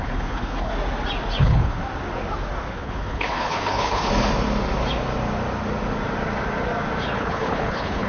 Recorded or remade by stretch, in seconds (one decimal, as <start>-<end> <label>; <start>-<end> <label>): 0.0-0.7 remade; 0.7-1.4 recorded; 1.4-1.8 remade; 1.8-2.7 recorded; 2.7-4.1 remade; 4.1-7.0 recorded; 7.0-8.1 remade